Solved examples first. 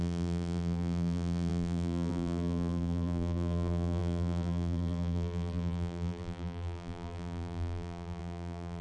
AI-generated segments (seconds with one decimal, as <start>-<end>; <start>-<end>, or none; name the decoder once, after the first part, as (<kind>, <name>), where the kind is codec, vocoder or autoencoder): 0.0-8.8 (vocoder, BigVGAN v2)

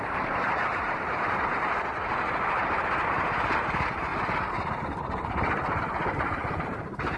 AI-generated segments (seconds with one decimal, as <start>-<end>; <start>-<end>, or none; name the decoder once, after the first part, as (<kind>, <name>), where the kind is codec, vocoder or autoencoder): 0.0-1.5 (vocoder, BigVGAN v2); 2.8-4.1; 5.8-7.2

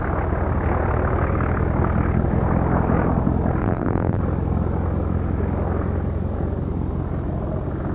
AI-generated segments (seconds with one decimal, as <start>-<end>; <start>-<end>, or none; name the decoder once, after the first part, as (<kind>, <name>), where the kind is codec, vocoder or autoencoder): 3.6-4.2 (vocoder, BigVGAN v2)